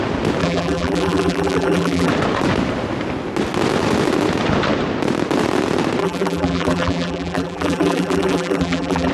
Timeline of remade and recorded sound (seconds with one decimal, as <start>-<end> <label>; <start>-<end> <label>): 0.0-0.4 recorded; 0.4-2.1 remade; 2.1-6.0 recorded; 6.0-9.1 remade

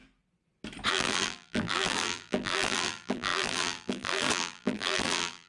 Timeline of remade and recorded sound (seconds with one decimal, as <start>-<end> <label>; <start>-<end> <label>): 0.0-0.9 recorded; 0.9-5.5 remade

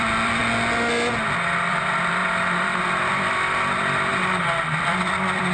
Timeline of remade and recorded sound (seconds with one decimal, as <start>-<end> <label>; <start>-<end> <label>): 0.0-0.4 remade; 0.4-1.7 recorded; 1.7-5.5 remade

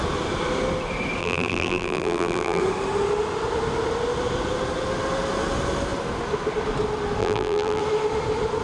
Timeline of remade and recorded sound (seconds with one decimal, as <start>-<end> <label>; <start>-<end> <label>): 0.0-1.2 recorded; 1.2-2.6 remade; 2.6-7.2 recorded; 7.2-7.8 remade; 7.8-8.6 recorded

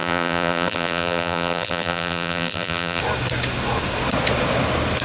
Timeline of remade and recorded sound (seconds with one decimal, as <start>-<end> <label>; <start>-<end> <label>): 0.0-3.0 remade; 3.0-5.0 recorded

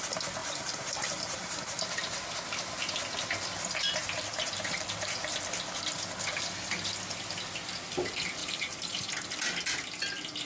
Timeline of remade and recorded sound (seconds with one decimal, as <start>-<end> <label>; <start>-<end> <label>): 0.0-0.4 recorded; 0.4-1.6 remade; 1.6-4.0 recorded; 4.0-5.3 remade; 5.3-8.4 recorded; 8.4-9.1 remade; 9.1-10.5 recorded